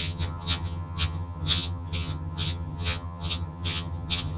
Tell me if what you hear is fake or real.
fake